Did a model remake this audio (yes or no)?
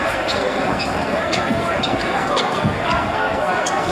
yes